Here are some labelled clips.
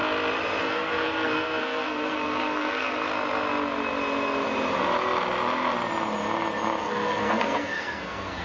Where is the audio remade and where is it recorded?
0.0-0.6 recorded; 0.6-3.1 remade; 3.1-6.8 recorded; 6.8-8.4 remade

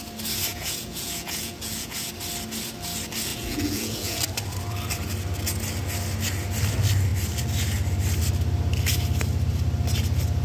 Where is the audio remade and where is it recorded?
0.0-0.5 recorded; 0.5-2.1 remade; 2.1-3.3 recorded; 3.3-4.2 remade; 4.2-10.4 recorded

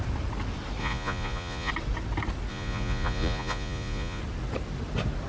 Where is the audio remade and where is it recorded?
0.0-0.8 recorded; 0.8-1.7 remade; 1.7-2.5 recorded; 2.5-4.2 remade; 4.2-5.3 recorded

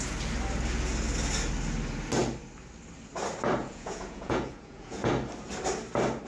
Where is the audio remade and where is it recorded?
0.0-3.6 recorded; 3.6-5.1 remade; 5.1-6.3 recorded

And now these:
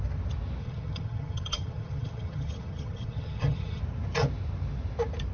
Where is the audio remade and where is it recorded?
0.0-0.6 recorded; 0.6-3.8 remade; 3.8-5.3 recorded